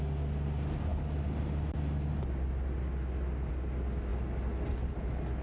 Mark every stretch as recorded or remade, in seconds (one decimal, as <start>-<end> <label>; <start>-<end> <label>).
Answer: 0.0-5.4 recorded